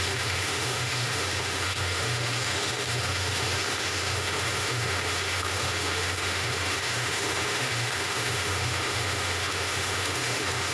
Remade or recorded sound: remade